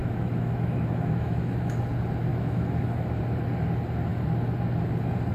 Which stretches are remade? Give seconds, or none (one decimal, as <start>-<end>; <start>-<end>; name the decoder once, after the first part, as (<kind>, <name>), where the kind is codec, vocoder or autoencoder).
0.0-1.8 (autoencoder, DAC-VAE); 2.3-3.2